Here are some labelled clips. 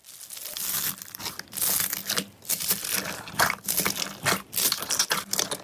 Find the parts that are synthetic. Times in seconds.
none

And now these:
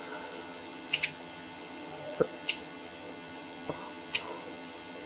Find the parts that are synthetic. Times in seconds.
0.0-5.1 (vocoder, HiFi-GAN)

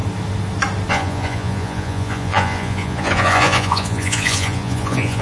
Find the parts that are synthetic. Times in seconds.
0.9-5.2 (vocoder, Vocos)

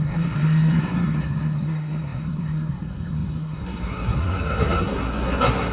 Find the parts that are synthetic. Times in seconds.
0.0-5.7 (codec, SNAC)

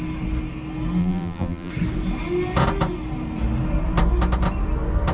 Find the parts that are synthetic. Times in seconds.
1.0-1.7 (vocoder, BigVGAN v2)